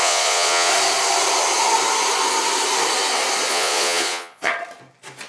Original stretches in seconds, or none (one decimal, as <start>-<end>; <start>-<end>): 0.7-3.5; 4.5-5.3